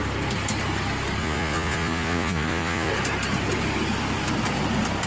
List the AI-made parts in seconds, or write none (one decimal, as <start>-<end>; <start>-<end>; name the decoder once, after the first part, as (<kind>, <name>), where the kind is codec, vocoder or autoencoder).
1.2-2.9 (vocoder, Vocos)

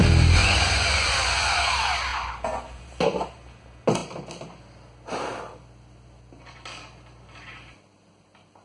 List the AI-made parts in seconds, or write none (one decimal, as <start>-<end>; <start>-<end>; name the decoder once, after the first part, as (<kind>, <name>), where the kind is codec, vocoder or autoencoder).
0.4-1.6 (vocoder, Vocos); 2.1-2.8